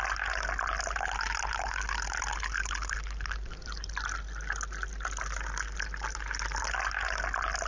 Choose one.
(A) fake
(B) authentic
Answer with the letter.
B